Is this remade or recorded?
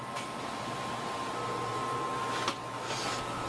recorded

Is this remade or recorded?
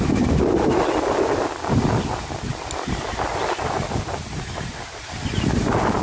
recorded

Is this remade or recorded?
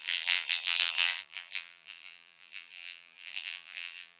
remade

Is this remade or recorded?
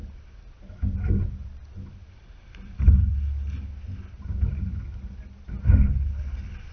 recorded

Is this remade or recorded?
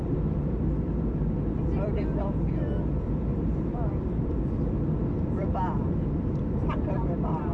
remade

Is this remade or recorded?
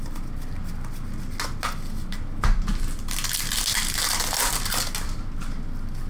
recorded